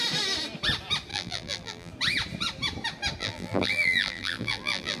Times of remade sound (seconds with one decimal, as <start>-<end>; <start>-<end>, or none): 1.1-1.9; 3.2-5.0